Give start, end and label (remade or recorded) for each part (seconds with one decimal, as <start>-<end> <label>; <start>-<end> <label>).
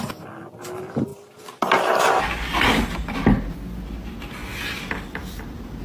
0.0-5.8 recorded